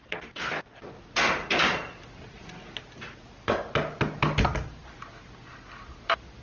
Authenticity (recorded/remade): recorded